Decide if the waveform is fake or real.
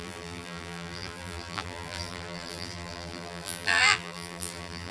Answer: fake